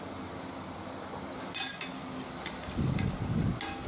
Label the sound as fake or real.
real